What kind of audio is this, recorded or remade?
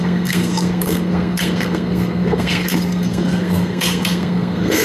remade